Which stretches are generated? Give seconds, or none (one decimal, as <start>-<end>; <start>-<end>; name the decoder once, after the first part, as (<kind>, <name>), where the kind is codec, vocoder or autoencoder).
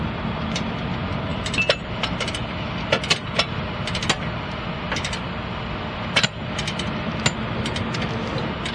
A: none